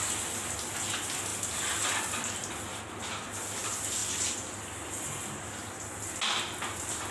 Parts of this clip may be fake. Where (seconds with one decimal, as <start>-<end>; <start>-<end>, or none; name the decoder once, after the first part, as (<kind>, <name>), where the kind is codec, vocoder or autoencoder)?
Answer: none